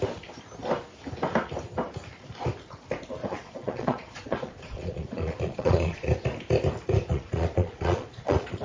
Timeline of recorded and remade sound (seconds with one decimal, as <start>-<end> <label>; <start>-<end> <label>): 0.0-3.2 recorded; 3.2-6.1 remade; 6.1-7.1 recorded; 7.1-8.6 remade